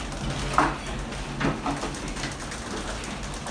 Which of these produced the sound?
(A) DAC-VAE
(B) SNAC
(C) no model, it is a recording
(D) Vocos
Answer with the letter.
C